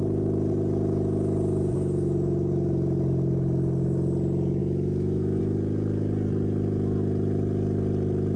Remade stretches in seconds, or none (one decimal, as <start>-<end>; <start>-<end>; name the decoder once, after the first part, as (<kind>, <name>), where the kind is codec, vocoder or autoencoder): 4.6-5.4 (autoencoder, DAC-VAE)